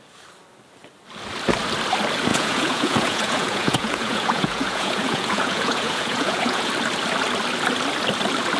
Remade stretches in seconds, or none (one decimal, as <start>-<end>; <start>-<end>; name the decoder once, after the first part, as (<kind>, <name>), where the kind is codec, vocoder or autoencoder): 2.3-6.7 (vocoder, Vocos)